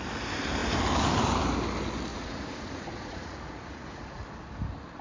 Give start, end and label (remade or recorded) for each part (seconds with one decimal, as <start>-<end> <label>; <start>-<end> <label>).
0.0-2.1 recorded; 2.1-4.2 remade; 4.2-5.0 recorded